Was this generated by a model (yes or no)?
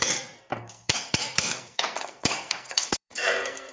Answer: yes